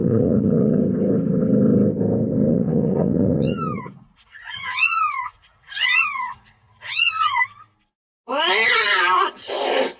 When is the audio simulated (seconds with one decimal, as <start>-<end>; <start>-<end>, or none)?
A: 0.0-0.8; 2.5-7.4